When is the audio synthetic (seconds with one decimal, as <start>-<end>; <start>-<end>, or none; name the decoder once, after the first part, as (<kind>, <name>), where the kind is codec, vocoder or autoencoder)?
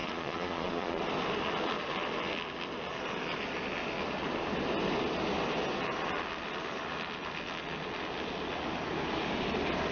0.0-1.0 (vocoder, Vocos)